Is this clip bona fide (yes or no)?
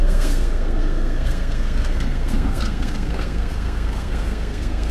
no